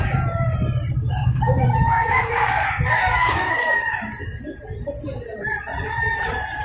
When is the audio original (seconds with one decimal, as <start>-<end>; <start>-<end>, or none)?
0.0-1.2; 4.0-6.6